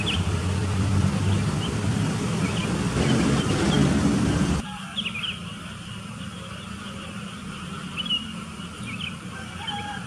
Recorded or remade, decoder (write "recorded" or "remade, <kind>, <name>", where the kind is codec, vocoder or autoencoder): remade, vocoder, BigVGAN v2